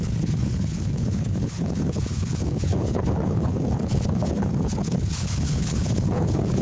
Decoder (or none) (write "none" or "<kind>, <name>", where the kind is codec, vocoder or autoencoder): codec, HILCodec